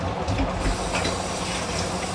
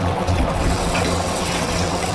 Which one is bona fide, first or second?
first